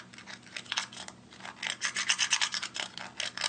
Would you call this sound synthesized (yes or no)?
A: no